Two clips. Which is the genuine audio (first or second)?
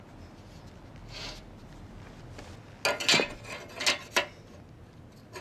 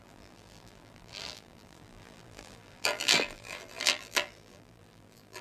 first